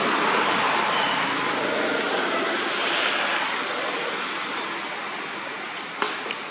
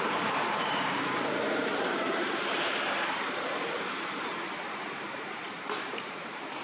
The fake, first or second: second